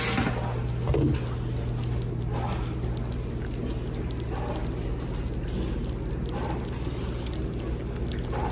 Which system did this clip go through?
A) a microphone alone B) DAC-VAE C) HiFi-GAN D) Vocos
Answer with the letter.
A